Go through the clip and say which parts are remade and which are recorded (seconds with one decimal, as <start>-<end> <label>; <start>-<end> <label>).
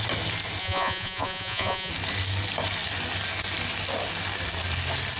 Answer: 0.0-0.6 recorded; 0.6-1.9 remade; 1.9-5.2 recorded